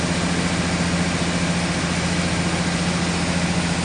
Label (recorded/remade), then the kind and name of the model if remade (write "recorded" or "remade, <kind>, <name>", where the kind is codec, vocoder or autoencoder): recorded